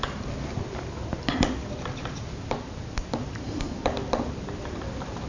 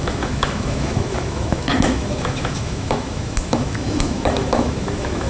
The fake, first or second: second